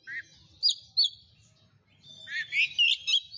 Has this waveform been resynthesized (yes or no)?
no